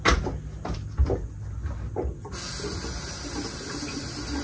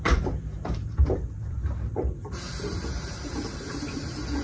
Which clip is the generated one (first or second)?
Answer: second